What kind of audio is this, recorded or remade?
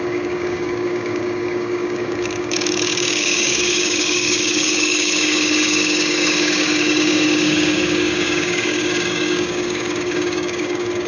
remade